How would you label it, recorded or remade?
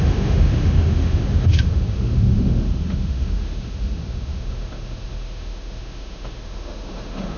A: remade